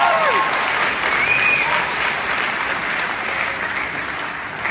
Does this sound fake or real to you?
real